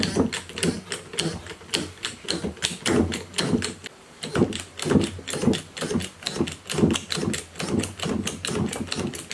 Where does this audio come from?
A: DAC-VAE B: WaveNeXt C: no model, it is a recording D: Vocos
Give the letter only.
C